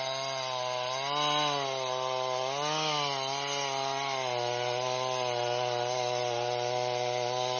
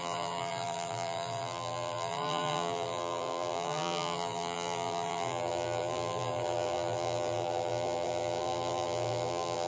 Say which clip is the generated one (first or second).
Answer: second